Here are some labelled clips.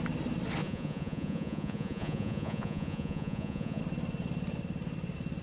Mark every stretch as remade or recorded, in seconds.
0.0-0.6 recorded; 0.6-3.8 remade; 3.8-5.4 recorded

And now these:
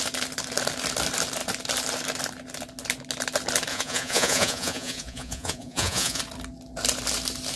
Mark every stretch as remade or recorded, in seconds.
0.0-3.7 recorded; 3.7-6.2 remade; 6.2-7.6 recorded

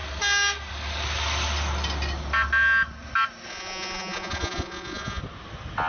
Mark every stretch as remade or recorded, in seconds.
0.0-3.5 recorded; 3.5-5.2 remade; 5.2-5.9 recorded

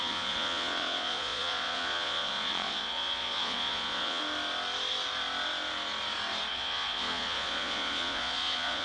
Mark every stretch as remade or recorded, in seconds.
0.0-4.2 remade; 4.2-6.5 recorded; 6.5-8.8 remade